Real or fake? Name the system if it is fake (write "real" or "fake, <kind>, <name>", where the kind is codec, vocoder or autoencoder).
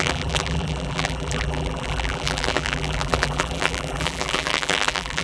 fake, vocoder, BigVGAN v2